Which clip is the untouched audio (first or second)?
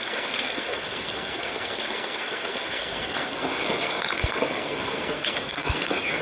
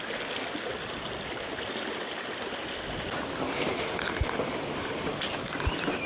second